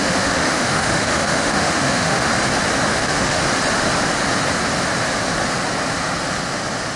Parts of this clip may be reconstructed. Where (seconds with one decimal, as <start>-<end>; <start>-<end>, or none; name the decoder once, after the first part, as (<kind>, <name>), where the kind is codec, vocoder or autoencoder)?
0.0-2.3 (autoencoder, DAC-VAE); 2.9-3.4